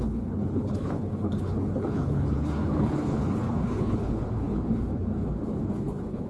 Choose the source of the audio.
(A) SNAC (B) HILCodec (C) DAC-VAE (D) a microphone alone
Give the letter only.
B